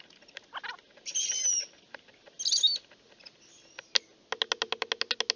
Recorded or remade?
recorded